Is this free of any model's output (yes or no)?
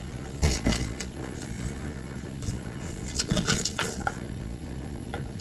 no